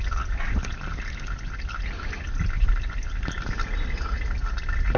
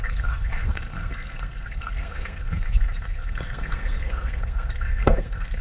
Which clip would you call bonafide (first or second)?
first